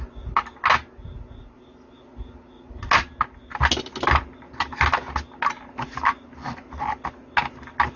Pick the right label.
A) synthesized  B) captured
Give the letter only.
B